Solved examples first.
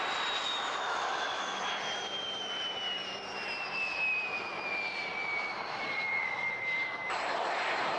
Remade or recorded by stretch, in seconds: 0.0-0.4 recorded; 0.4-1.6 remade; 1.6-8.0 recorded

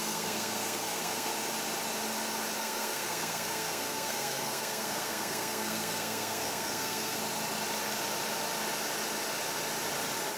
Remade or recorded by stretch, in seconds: 0.0-1.3 remade; 1.3-2.6 recorded; 2.6-7.2 remade; 7.2-10.4 recorded

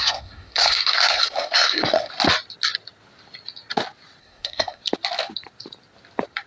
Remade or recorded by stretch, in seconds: 0.0-2.1 remade; 2.1-4.2 recorded; 4.2-4.8 remade; 4.8-6.5 recorded

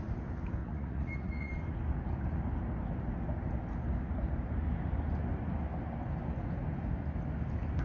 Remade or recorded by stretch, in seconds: 0.0-0.6 recorded; 0.6-1.5 remade; 1.5-7.8 recorded

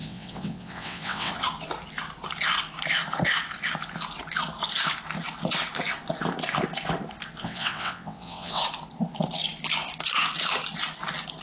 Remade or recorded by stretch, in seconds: 0.0-1.3 remade; 1.3-7.4 recorded; 7.4-8.6 remade; 8.6-11.4 recorded

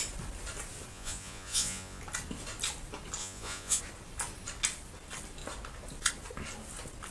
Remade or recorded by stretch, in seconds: 0.0-0.9 recorded; 0.9-2.0 remade; 2.0-3.2 recorded; 3.2-3.8 remade; 3.8-7.1 recorded

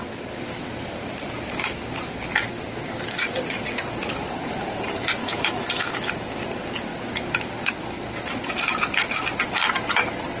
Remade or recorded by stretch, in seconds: 0.0-5.2 recorded; 5.2-6.1 remade; 6.1-10.4 recorded